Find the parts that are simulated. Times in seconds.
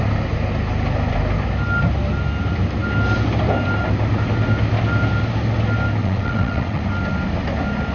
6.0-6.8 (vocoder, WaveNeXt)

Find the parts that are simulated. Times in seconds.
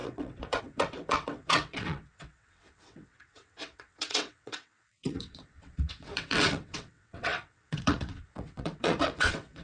0.0-9.6 (vocoder, WaveNeXt)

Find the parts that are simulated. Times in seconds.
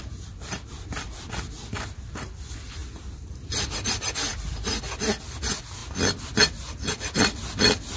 none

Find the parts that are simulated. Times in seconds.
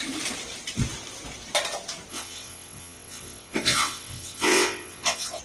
2.1-5.4 (vocoder, WaveNeXt)